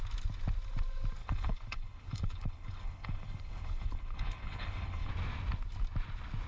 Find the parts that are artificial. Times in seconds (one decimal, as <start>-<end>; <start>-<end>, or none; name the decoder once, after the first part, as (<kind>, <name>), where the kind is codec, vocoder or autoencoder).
1.2-5.1 (codec, HILCodec)